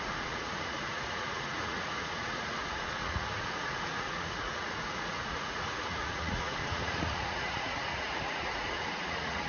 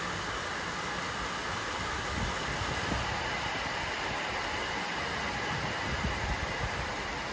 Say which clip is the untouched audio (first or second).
second